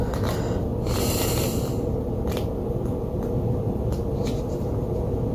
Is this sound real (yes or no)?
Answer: yes